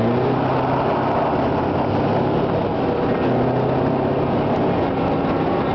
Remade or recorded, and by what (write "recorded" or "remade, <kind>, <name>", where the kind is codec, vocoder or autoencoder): recorded